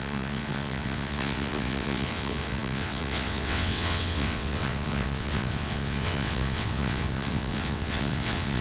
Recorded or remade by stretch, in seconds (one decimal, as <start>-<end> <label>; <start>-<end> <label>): 0.0-8.6 remade

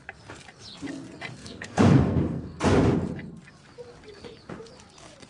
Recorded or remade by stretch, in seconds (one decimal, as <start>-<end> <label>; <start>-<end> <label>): 0.0-1.4 recorded; 1.4-2.6 remade; 2.6-5.3 recorded

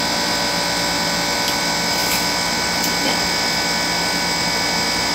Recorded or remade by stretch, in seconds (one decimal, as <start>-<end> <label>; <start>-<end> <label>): 0.0-5.1 recorded

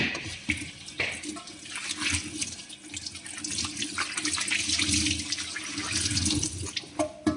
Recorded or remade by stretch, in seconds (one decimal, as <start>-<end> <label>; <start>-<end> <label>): 0.0-7.4 recorded

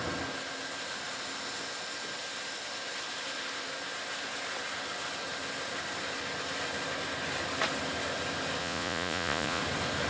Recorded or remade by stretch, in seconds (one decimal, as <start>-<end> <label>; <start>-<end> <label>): 0.0-8.6 recorded; 8.6-9.6 remade; 9.6-10.1 recorded

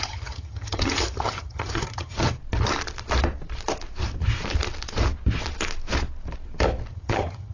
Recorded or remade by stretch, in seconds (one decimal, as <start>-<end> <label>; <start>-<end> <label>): 0.0-2.4 remade; 2.4-6.9 recorded; 6.9-7.5 remade

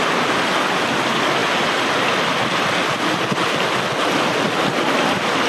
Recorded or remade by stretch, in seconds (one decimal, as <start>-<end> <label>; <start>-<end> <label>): 0.0-5.5 recorded

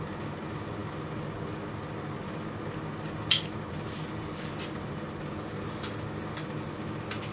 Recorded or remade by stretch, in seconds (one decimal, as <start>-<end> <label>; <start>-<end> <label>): 0.0-7.3 recorded